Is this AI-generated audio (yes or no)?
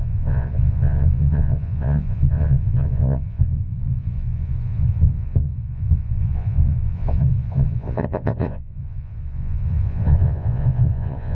yes